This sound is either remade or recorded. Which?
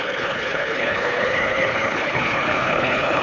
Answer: remade